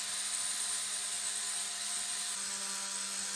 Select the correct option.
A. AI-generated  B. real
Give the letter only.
B